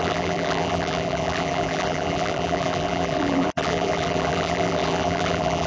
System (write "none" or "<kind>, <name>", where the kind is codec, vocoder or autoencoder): vocoder, BigVGAN v2